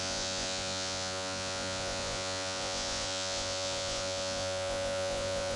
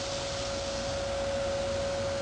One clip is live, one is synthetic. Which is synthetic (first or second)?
first